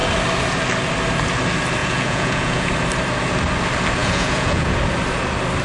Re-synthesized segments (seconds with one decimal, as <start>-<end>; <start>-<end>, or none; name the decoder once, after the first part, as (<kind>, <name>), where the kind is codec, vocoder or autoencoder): 1.8-2.7 (vocoder, Vocos); 4.0-4.8